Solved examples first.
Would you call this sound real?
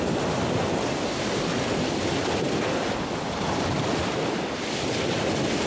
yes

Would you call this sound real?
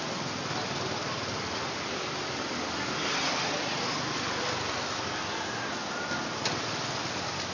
yes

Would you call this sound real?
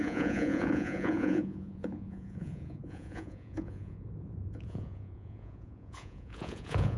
no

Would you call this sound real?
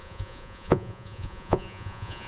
no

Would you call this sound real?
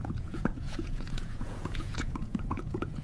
no